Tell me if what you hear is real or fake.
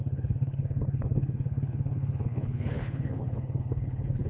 fake